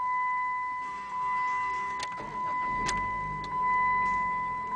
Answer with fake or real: real